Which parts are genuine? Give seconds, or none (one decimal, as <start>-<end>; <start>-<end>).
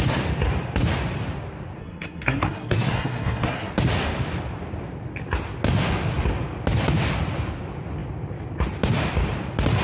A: 0.0-1.8; 3.7-9.8